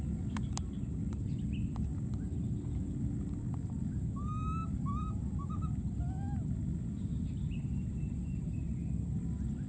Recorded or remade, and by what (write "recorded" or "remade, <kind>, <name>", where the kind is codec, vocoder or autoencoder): recorded